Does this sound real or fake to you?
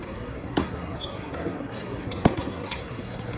fake